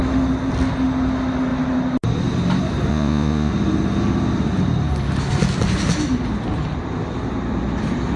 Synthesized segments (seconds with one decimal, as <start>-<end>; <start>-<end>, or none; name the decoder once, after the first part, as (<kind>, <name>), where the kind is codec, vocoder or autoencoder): 2.9-3.5 (vocoder, Vocos)